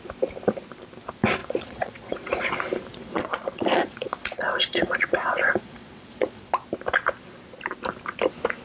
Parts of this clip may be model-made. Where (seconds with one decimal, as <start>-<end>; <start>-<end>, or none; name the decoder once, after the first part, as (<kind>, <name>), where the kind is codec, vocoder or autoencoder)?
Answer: 1.4-2.5 (vocoder, Vocos); 2.9-6.5